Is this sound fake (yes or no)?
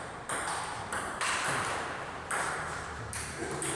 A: yes